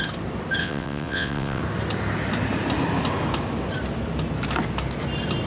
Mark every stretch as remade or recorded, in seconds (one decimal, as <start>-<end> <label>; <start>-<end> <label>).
0.0-0.6 recorded; 0.6-1.6 remade; 1.6-5.5 recorded